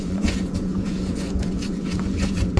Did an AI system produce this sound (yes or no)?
yes